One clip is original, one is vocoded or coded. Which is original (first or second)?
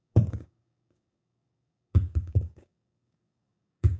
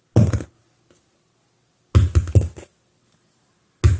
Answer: second